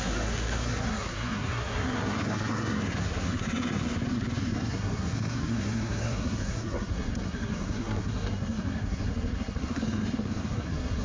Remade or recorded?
remade